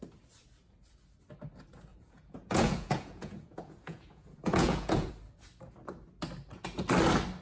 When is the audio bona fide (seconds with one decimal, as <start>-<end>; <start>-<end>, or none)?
0.0-1.9; 5.1-7.4